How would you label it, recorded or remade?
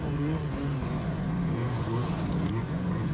remade